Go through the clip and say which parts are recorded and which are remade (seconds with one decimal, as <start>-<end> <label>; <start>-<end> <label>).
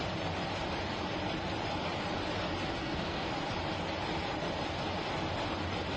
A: 0.0-2.8 recorded; 2.8-3.3 remade; 3.3-6.0 recorded